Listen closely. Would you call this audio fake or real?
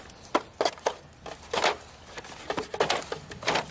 real